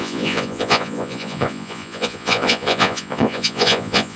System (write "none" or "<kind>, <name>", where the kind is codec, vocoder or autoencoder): vocoder, Vocos